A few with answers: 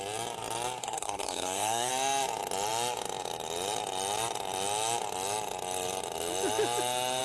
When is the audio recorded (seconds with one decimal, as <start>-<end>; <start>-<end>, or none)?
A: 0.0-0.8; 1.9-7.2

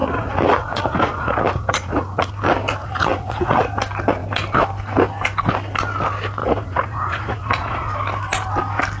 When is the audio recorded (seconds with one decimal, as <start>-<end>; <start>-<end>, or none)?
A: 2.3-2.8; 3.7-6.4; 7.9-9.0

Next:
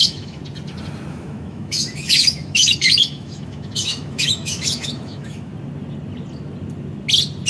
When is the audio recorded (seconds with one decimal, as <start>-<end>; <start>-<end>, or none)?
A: 0.4-1.1; 5.5-7.5